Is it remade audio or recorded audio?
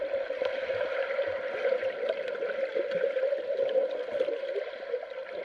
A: recorded